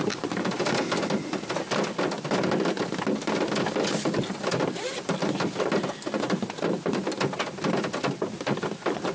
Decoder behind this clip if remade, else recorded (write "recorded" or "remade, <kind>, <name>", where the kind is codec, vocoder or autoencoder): recorded